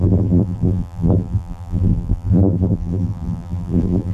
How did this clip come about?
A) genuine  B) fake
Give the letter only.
B